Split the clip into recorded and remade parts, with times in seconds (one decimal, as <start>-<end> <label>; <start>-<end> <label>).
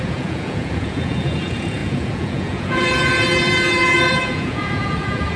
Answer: 0.0-5.4 remade